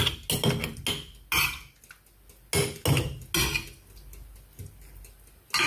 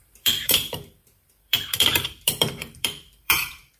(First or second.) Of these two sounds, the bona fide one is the first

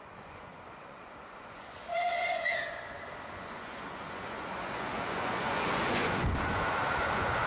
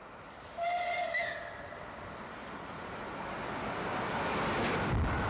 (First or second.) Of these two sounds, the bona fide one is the second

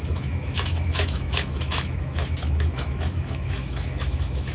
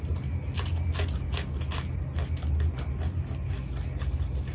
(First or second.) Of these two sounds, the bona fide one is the second